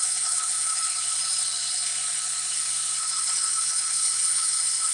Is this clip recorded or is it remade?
remade